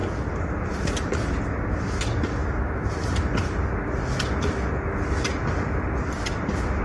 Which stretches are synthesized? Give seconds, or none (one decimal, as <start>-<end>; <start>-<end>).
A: none